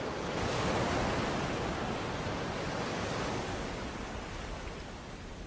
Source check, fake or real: real